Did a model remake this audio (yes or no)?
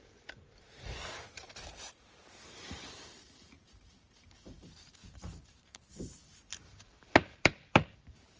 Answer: yes